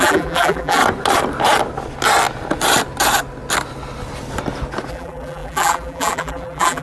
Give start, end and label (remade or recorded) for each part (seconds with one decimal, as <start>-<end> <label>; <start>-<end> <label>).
0.0-0.8 remade; 0.8-4.9 recorded; 4.9-6.8 remade